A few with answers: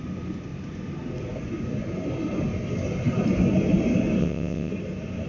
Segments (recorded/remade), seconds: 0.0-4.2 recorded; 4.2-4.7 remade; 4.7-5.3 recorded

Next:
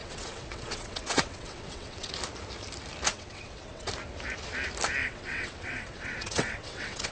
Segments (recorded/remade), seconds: 0.0-2.1 remade; 2.1-3.1 recorded; 3.1-3.9 remade; 3.9-5.0 recorded; 5.0-7.1 remade

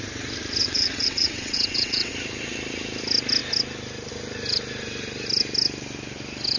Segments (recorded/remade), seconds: 0.0-0.6 recorded; 0.6-2.1 remade; 2.1-6.6 recorded

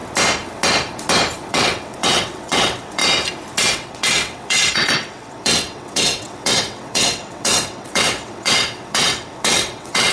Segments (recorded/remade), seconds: 0.0-1.5 recorded; 1.5-3.0 remade; 3.0-3.7 recorded; 3.7-10.1 remade

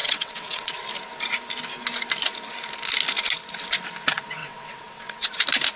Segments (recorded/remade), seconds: 0.0-0.7 remade; 0.7-4.4 recorded; 4.4-5.3 remade; 5.3-5.8 recorded

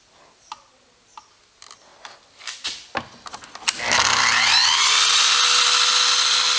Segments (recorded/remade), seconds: 0.0-6.6 recorded

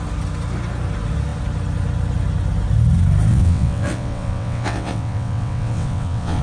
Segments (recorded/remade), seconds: 0.0-3.3 recorded; 3.3-6.4 remade